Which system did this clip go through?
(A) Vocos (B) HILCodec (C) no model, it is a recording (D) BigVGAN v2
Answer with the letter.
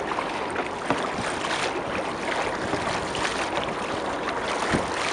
C